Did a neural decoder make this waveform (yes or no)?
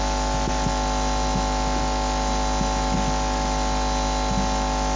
no